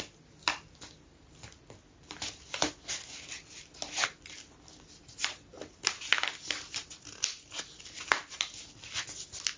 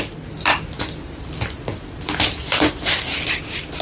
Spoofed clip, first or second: second